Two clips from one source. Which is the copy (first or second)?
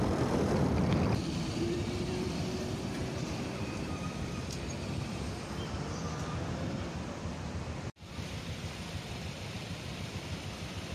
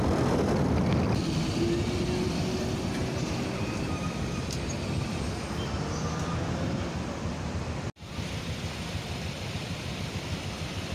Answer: first